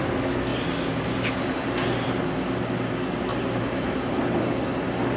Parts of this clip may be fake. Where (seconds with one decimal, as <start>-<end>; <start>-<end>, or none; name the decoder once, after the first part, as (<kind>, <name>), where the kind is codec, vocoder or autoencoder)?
0.5-2.2 (vocoder, BigVGAN v2); 3.3-4.5